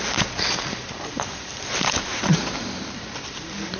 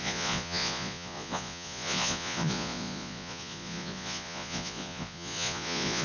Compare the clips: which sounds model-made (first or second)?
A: second